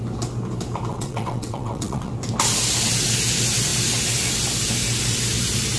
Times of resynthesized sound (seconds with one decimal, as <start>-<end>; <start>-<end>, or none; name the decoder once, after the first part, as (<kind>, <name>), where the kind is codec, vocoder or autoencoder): 0.9-2.1 (vocoder, WaveNeXt)